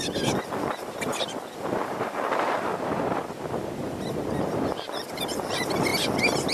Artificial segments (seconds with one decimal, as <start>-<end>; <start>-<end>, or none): 0.0-1.1; 1.6-2.7; 4.1-5.9